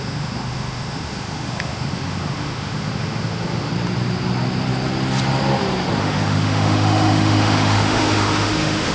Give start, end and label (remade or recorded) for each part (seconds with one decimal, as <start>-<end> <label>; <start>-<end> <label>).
0.0-3.7 remade; 3.7-6.0 recorded; 6.0-8.9 remade